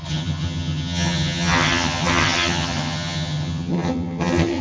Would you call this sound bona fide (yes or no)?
no